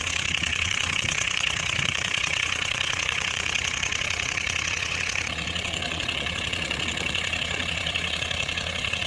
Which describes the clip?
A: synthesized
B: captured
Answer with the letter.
A